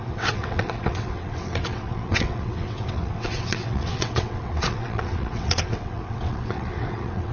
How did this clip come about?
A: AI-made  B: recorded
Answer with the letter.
A